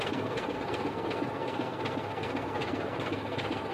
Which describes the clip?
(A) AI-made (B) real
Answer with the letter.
A